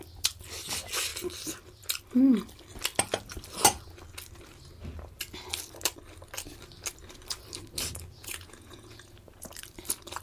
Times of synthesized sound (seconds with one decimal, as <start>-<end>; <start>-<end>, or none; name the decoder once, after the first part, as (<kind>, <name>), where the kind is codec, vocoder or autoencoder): 8.2-9.5 (vocoder, Vocos)